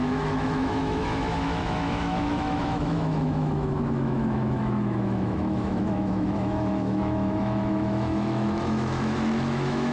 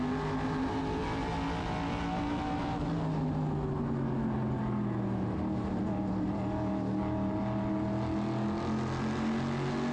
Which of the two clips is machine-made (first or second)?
first